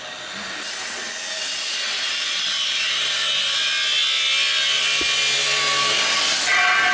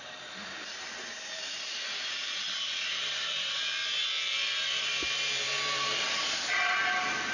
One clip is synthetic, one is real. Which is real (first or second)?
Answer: first